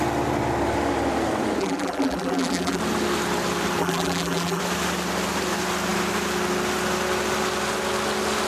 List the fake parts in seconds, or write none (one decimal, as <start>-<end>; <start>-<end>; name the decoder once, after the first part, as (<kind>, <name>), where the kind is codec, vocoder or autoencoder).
1.6-2.8 (vocoder, BigVGAN v2); 3.8-4.6